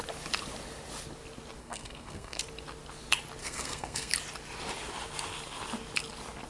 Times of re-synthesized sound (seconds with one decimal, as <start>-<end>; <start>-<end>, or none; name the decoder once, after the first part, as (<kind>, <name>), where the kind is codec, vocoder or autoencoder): 1.6-2.4 (codec, SNAC); 3.4-4.1